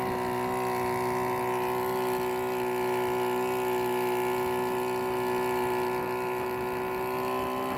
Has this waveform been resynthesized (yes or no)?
no